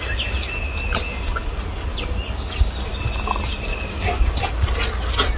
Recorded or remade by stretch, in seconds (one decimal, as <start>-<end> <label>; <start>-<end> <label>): 0.0-3.7 recorded; 3.7-4.3 remade; 4.3-5.4 recorded